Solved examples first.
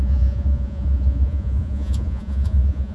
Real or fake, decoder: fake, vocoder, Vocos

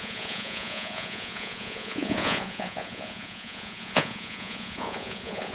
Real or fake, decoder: fake, vocoder, Vocos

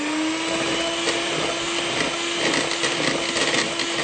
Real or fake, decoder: real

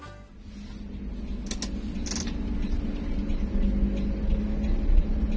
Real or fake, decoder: real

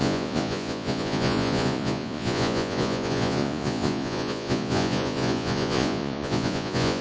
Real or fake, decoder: fake, vocoder, Vocos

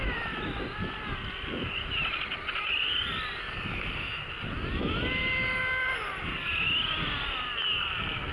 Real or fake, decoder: real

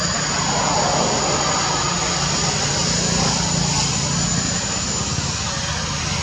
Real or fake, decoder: real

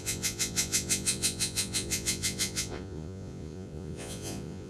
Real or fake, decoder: fake, vocoder, Vocos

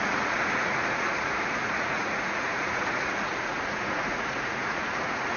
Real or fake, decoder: fake, vocoder, Vocos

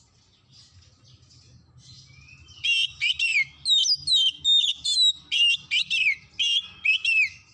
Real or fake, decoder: real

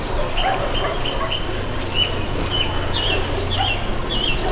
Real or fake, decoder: real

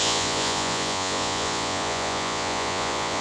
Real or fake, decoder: fake, vocoder, Vocos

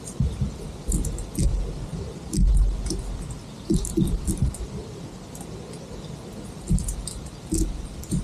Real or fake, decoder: real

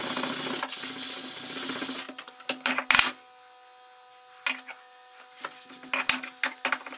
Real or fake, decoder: real